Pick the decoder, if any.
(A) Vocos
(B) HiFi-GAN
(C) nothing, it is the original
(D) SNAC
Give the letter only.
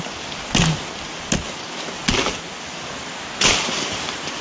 C